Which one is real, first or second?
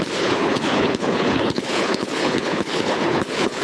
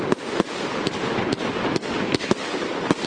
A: second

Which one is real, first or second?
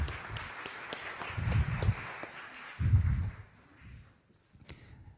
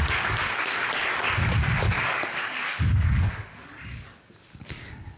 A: first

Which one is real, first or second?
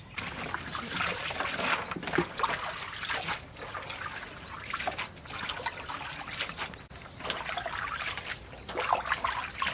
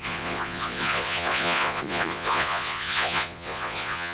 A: first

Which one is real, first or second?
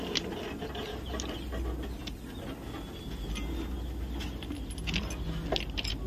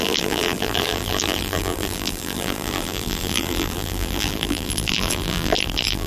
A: first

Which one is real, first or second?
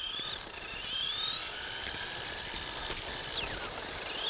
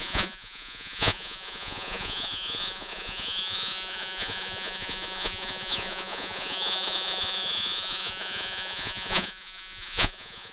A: first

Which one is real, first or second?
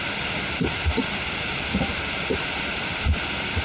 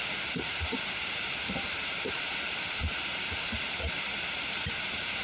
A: first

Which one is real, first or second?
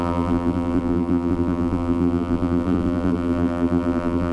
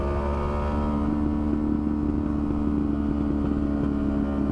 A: second